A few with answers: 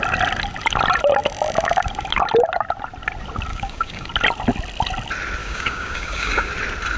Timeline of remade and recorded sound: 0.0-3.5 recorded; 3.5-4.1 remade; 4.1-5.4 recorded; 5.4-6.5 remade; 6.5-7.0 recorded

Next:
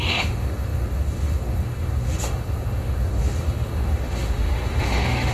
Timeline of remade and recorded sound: 0.0-5.3 remade

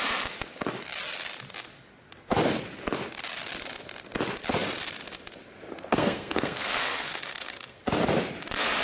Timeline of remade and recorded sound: 0.0-5.9 recorded; 5.9-7.8 remade; 7.8-8.8 recorded

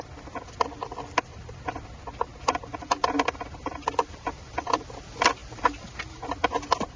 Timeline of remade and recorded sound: 0.0-2.3 recorded; 2.3-4.8 remade; 4.8-5.4 recorded; 5.4-6.2 remade; 6.2-7.0 recorded

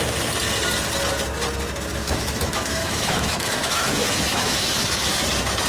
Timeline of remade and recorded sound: 0.0-2.0 recorded; 2.0-5.2 remade; 5.2-5.7 recorded

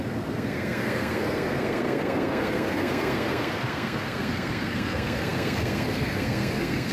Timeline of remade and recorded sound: 0.0-6.9 remade

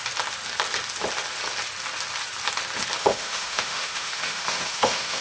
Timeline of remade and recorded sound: 0.0-3.0 recorded; 3.0-5.2 remade

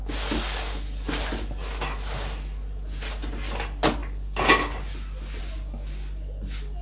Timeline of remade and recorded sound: 0.0-6.8 recorded